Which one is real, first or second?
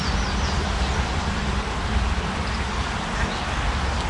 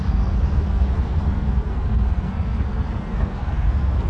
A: first